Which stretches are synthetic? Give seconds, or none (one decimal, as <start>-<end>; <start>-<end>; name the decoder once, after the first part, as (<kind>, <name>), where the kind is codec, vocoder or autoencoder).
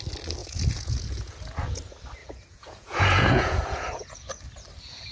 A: 0.4-1.8 (vocoder, Vocos); 2.2-4.3